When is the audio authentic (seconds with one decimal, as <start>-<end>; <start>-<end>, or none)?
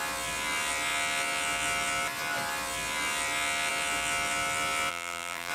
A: 0.0-4.9